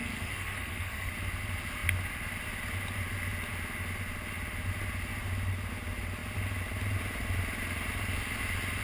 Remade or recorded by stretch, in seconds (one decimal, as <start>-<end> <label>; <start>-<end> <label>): 0.0-1.1 remade; 1.1-8.8 recorded